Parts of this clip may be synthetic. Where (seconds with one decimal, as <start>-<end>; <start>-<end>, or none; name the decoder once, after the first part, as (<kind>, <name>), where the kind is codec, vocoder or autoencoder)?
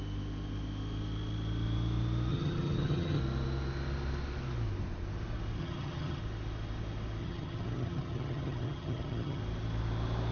2.3-3.2 (vocoder, HiFi-GAN); 5.6-6.2; 7.2-9.4